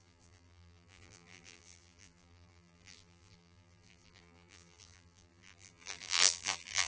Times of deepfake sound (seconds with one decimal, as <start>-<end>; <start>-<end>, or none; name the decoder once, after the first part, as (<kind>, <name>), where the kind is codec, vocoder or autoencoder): 0.0-6.9 (vocoder, BigVGAN v2)